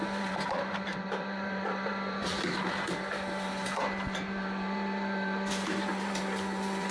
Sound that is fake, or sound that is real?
fake